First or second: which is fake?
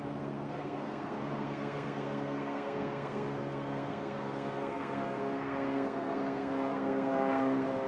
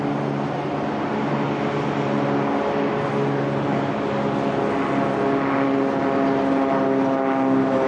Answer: first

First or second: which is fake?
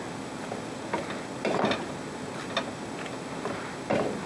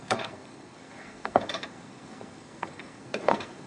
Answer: second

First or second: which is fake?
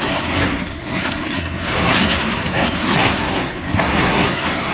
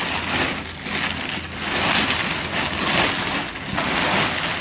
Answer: first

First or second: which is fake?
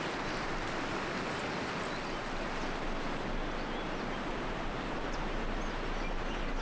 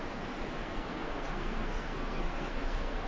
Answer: second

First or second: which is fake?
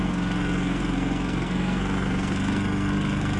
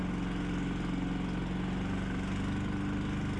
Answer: first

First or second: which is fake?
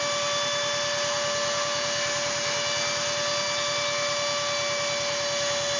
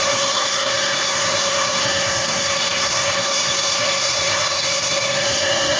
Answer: second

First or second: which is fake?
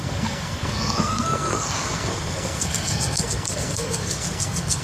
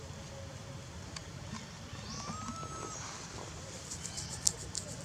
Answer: first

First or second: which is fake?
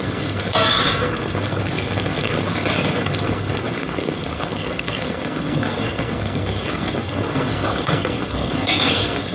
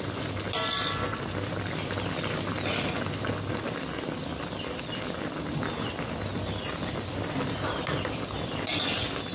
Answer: first